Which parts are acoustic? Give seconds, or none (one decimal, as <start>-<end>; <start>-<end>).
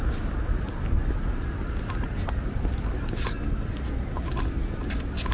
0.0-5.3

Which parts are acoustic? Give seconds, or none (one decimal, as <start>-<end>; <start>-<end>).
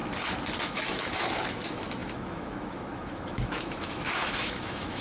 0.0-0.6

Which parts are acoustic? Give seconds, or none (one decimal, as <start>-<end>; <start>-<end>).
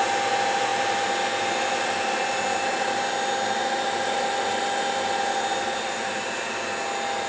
0.0-7.3